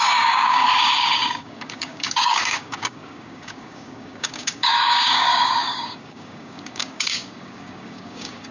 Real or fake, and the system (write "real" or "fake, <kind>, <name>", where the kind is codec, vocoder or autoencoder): fake, codec, DAC